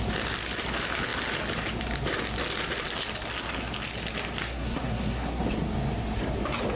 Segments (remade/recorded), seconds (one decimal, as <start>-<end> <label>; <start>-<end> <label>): 0.0-4.4 recorded; 4.4-5.4 remade; 5.4-6.8 recorded